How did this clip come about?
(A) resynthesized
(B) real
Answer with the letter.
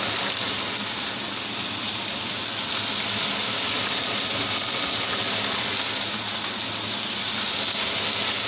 B